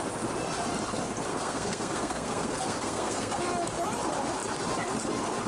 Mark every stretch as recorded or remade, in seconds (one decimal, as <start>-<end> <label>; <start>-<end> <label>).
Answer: 0.0-1.3 recorded; 1.3-3.4 remade; 3.4-5.5 recorded